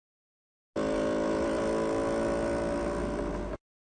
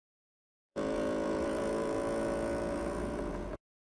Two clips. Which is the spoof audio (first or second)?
second